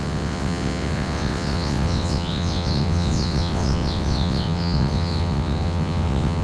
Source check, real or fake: fake